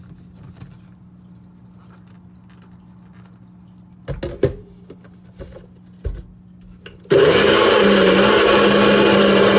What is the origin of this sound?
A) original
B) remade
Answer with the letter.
A